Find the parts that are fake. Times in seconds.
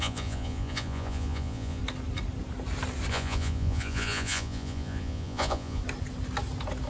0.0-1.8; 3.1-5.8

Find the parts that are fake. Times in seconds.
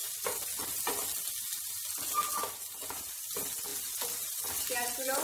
none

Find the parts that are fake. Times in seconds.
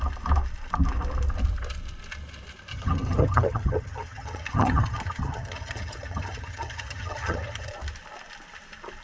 2.7-7.7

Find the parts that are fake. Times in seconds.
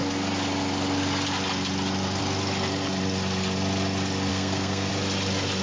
4.3-4.9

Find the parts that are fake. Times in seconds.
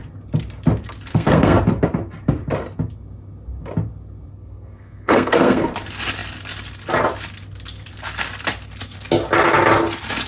1.1-1.6; 4.3-5.7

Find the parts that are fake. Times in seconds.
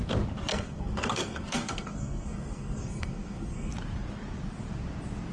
0.5-3.7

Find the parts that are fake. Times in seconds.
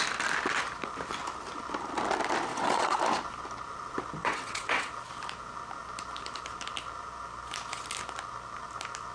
2.5-3.0; 4.2-4.9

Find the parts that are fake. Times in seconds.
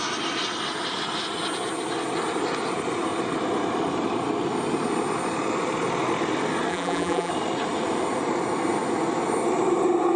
6.7-7.3